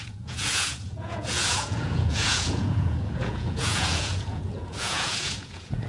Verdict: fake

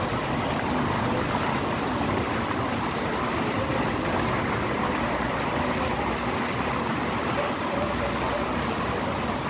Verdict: real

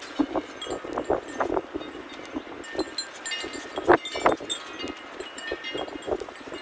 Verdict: real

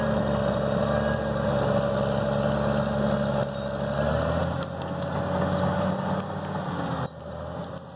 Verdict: real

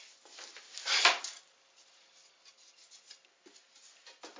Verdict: real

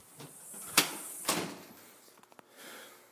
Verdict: real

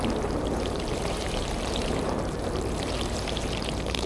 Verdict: fake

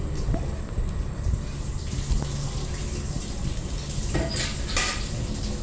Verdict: real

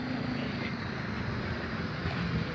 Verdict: real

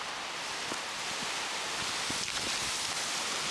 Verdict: real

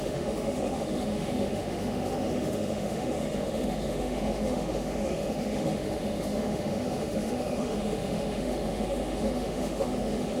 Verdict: fake